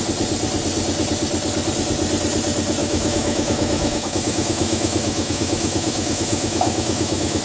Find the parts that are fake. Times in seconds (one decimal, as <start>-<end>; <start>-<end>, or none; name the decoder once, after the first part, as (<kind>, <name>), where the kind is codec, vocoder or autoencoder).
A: 2.8-7.4 (autoencoder, DAC-VAE)